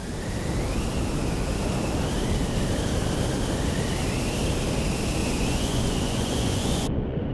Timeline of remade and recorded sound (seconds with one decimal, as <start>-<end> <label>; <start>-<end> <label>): 0.0-5.2 recorded; 5.2-7.3 remade